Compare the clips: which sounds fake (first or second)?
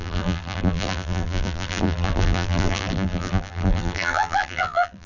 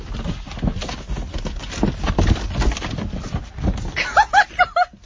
first